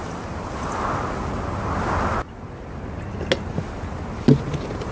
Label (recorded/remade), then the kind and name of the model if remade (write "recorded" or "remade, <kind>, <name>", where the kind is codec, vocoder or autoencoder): recorded